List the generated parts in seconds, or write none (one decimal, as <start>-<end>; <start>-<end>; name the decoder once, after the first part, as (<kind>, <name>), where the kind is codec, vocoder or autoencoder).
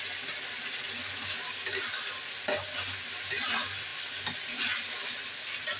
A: none